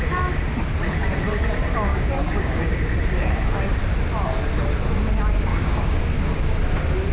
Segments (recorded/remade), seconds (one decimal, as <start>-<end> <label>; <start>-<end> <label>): 0.0-1.9 recorded; 1.9-2.8 remade; 2.8-5.5 recorded; 5.5-6.0 remade; 6.0-7.1 recorded